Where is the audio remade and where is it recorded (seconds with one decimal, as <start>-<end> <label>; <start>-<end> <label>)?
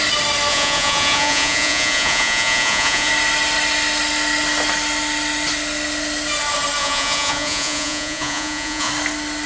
0.0-0.5 recorded; 0.5-3.1 remade; 3.1-6.8 recorded; 6.8-8.9 remade; 8.9-9.5 recorded